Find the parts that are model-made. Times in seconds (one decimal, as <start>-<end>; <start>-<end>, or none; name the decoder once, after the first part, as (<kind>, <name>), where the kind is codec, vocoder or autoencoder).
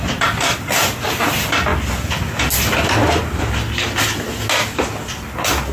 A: none